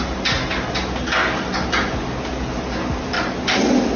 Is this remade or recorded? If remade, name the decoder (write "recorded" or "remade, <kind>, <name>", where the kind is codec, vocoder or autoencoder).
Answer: recorded